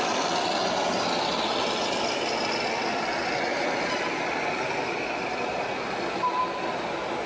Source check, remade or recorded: recorded